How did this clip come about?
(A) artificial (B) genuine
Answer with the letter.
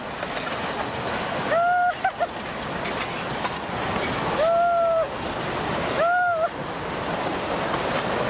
B